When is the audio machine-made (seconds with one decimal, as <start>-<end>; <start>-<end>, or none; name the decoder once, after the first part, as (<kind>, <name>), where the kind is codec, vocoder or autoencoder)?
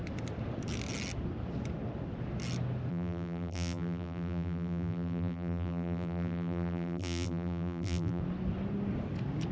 2.9-8.2 (vocoder, BigVGAN v2)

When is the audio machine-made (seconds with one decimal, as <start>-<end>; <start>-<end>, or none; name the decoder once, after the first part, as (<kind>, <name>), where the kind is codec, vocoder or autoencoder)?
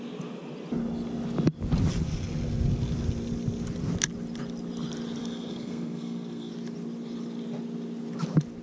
5.2-6.5 (codec, SNAC)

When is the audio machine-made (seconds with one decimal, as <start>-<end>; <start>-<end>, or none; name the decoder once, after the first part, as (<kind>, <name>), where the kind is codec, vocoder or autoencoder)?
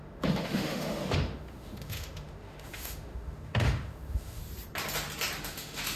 0.0-4.4 (autoencoder, DAC-VAE); 5.4-6.0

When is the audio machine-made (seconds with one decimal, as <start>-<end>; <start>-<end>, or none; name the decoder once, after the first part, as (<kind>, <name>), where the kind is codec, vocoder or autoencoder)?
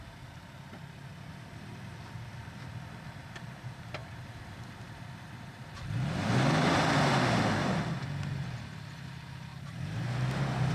none